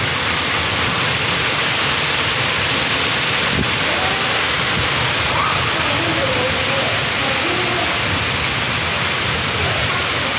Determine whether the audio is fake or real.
real